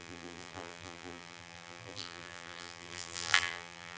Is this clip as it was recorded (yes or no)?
no